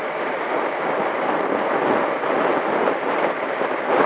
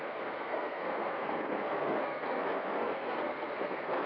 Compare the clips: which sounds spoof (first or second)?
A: second